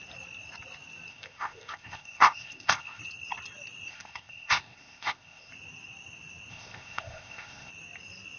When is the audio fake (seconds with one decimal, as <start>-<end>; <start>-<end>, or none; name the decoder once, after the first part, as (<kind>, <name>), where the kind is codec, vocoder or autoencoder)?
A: 1.1-3.0 (codec, ZipCodec); 3.9-5.5; 6.5-7.7